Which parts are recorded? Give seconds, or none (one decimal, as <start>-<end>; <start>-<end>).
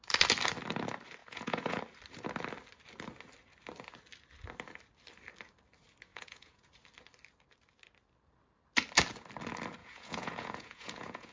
0.0-1.2; 1.8-6.1; 6.7-9.8